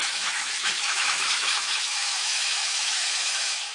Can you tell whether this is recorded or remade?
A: remade